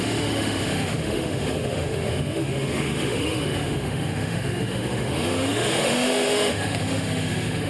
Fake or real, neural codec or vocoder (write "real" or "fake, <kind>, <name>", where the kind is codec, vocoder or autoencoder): fake, autoencoder, DAC-VAE